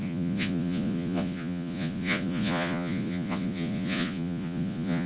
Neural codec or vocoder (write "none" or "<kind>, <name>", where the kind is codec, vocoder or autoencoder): vocoder, Vocos